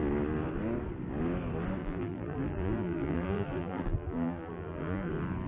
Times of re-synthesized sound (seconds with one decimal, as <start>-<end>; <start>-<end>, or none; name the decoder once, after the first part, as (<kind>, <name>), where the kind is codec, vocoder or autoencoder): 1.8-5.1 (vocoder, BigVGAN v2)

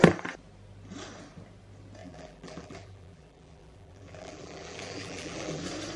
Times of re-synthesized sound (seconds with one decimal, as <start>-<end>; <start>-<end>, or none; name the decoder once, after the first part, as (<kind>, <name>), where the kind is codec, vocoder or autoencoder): 2.0-5.6 (vocoder, BigVGAN v2)

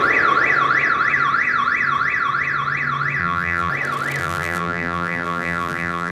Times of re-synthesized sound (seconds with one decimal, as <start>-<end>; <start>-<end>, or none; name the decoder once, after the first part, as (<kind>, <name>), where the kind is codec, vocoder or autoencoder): 3.2-3.7 (vocoder, BigVGAN v2); 4.2-6.1